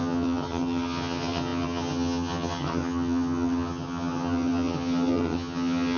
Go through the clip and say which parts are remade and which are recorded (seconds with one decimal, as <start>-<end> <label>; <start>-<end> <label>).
0.0-6.0 remade